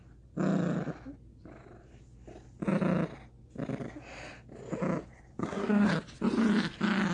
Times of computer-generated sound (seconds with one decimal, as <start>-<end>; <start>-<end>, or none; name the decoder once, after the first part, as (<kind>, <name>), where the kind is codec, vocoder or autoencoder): 5.4-5.9 (codec, SNAC)